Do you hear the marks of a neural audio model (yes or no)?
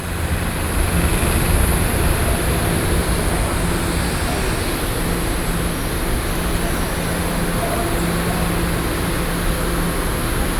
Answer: no